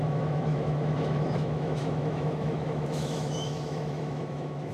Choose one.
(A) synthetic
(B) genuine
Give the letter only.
A